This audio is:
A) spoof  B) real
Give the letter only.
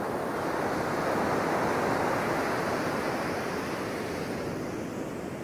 B